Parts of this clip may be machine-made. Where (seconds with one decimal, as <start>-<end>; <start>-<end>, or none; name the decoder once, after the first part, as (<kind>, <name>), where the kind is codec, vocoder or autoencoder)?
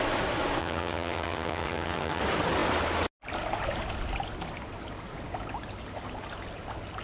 0.6-2.2 (vocoder, HiFi-GAN)